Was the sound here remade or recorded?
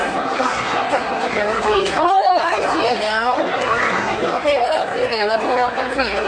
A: remade